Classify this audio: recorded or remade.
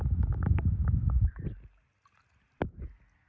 recorded